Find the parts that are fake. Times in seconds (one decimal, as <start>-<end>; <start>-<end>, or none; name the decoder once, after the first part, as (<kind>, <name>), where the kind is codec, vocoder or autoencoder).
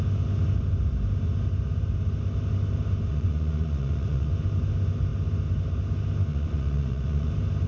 3.1-4.3 (vocoder, Vocos); 6.3-7.3